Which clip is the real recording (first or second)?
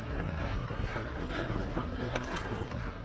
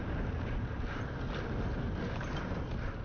second